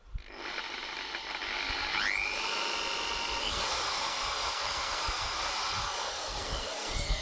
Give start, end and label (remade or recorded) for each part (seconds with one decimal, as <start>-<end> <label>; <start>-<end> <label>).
0.0-3.4 recorded; 3.4-7.2 remade